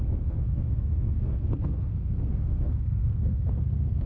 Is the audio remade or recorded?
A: remade